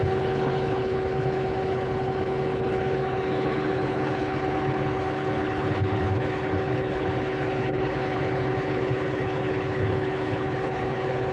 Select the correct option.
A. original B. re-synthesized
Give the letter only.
B